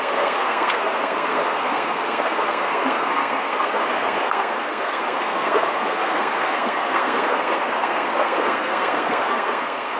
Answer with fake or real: fake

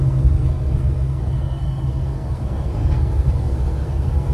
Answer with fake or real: fake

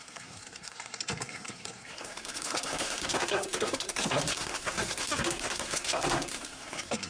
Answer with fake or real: fake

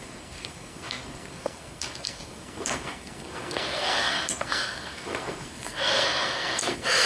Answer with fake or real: fake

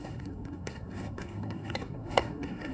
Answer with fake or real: fake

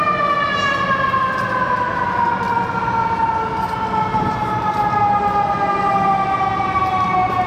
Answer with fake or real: real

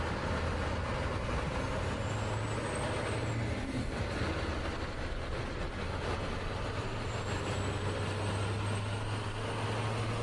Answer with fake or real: real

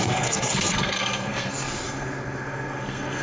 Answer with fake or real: fake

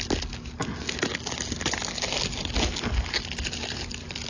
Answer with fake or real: real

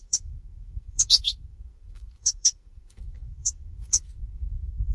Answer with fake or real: fake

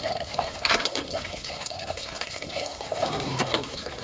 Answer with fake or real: fake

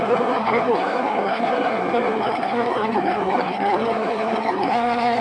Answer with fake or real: fake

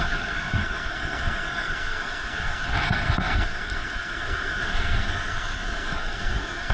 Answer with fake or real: fake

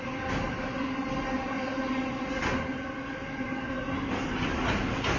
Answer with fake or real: real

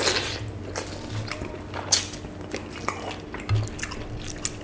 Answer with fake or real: real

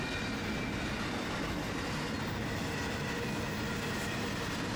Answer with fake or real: real